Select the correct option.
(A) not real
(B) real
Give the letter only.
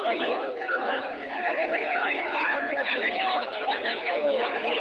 A